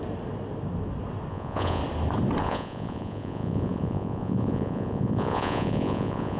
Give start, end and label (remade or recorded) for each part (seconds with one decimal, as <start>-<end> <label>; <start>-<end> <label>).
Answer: 0.0-1.3 recorded; 1.3-1.8 remade; 1.8-2.4 recorded; 2.4-6.4 remade